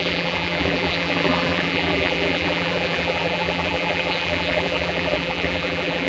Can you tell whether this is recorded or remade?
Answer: remade